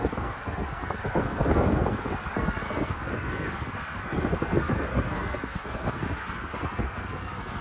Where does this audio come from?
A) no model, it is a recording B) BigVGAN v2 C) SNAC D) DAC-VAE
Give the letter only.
C